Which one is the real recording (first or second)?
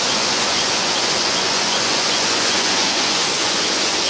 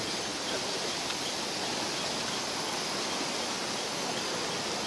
second